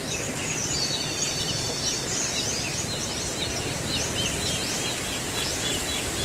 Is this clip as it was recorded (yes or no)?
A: yes